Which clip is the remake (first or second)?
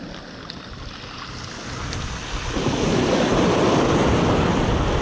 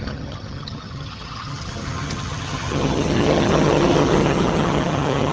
second